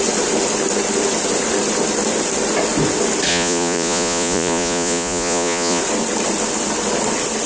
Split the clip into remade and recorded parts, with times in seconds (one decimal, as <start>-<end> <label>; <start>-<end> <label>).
0.0-3.3 recorded; 3.3-5.8 remade; 5.8-7.5 recorded